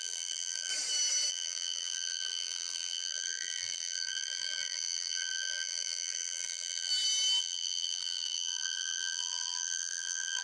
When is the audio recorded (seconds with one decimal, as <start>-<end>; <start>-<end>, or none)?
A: 0.7-1.3; 6.9-7.4